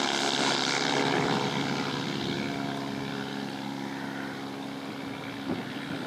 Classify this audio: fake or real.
real